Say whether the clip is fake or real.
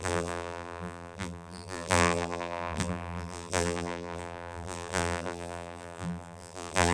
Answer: fake